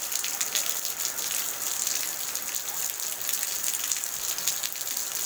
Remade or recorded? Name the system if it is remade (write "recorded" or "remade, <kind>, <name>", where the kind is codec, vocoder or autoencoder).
recorded